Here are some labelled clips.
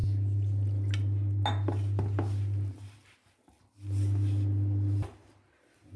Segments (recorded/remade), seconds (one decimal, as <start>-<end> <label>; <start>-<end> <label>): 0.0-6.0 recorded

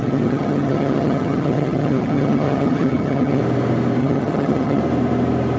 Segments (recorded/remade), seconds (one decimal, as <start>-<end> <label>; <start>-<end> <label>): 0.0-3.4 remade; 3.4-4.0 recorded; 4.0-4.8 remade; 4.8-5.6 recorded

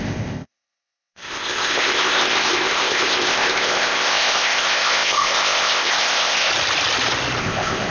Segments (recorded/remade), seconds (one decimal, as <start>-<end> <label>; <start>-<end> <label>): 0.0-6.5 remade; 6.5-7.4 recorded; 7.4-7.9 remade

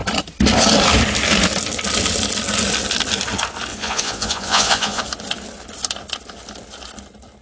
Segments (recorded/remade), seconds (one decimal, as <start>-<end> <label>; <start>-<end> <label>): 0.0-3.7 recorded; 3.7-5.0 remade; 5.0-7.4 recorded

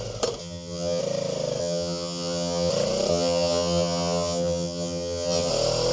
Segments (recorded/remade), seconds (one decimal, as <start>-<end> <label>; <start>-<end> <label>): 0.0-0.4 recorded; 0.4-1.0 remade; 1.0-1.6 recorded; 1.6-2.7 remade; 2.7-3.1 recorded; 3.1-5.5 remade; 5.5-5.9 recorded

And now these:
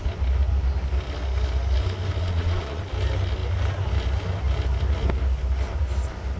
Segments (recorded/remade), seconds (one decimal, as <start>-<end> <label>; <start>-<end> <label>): 0.0-2.2 recorded; 2.2-2.8 remade; 2.8-6.4 recorded

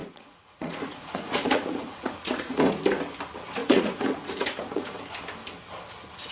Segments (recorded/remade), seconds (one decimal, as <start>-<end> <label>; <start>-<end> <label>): 0.0-2.7 remade; 2.7-3.6 recorded; 3.6-5.0 remade; 5.0-6.3 recorded